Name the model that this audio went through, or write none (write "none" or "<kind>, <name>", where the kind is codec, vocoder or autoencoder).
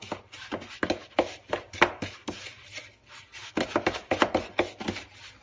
none